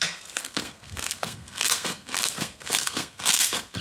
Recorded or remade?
remade